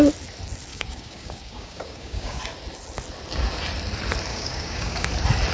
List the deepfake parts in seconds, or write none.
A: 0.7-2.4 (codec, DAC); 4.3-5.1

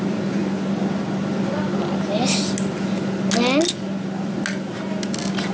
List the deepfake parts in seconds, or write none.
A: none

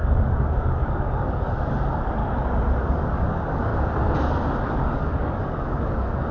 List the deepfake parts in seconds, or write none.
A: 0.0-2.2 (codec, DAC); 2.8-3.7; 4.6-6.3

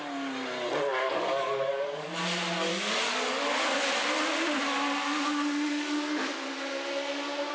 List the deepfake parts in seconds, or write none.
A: 0.9-2.2 (codec, DAC); 2.7-3.4